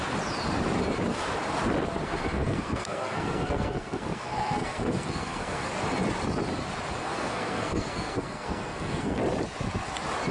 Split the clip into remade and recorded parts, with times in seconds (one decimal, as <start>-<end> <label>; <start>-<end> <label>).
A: 0.0-2.0 recorded; 2.0-5.7 remade; 5.7-7.0 recorded; 7.0-9.2 remade; 9.2-10.3 recorded